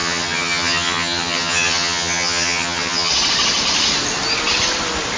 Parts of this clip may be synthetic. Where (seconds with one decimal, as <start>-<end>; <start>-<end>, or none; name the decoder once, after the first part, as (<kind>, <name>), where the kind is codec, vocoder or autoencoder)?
0.0-3.1 (vocoder, HiFi-GAN)